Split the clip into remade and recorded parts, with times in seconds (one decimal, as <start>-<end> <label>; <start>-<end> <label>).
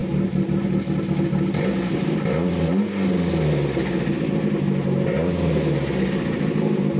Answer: 0.0-0.8 remade; 0.8-7.0 recorded